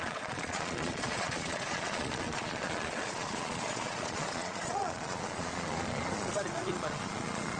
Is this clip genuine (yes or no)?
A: no